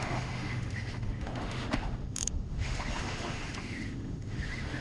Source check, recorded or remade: remade